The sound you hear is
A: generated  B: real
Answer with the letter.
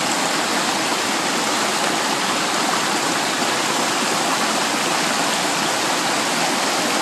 B